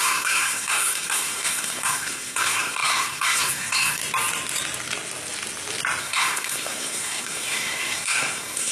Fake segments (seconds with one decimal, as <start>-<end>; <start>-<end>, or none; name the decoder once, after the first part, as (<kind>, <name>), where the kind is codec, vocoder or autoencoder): 0.0-4.0 (codec, SNAC); 6.0-8.7